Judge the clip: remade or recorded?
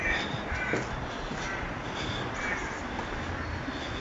recorded